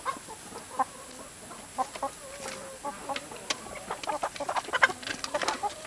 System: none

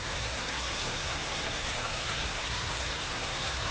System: codec, SNAC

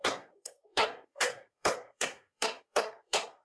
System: codec, SNAC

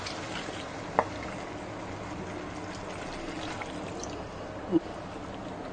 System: none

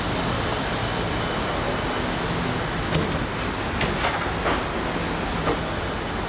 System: none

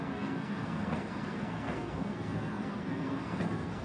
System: codec, SNAC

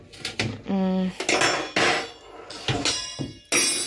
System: none